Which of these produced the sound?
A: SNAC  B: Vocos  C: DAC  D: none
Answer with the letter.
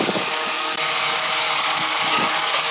C